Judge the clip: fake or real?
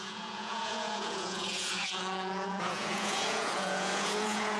fake